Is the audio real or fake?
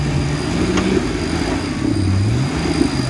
real